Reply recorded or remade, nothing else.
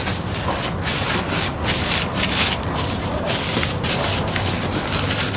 recorded